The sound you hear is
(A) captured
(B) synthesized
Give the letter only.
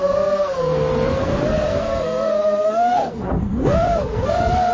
B